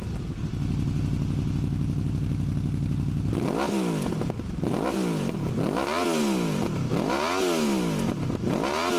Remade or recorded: recorded